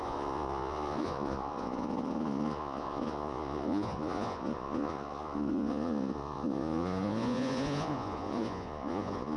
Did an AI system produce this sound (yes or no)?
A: yes